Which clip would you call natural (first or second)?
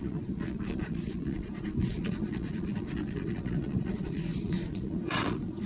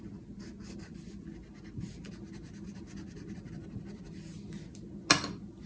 second